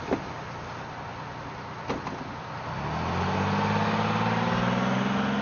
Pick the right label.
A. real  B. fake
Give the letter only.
A